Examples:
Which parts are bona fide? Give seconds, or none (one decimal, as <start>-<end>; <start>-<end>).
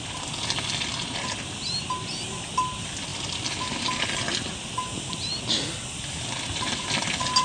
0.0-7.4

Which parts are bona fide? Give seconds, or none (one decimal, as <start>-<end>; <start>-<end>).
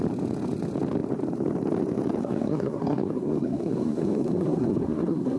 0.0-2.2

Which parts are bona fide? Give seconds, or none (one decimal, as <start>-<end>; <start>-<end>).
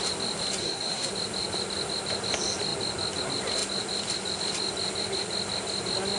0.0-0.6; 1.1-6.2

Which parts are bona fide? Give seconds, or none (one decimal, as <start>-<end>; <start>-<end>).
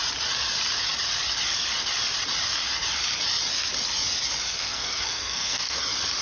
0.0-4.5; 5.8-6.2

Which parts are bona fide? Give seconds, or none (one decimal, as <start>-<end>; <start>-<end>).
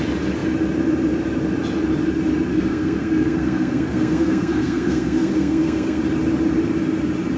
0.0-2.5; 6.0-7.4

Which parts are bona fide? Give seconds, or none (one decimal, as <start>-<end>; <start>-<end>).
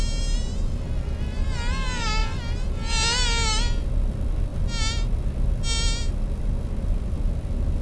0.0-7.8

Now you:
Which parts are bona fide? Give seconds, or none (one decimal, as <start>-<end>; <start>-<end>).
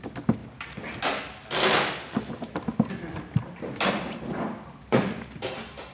0.0-5.9